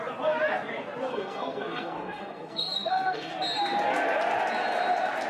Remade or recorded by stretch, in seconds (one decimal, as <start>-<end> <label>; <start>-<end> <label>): 0.0-1.1 recorded; 1.1-3.3 remade; 3.3-5.3 recorded